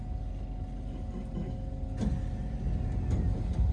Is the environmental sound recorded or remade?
recorded